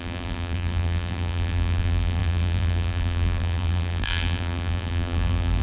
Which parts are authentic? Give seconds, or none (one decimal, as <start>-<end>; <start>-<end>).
none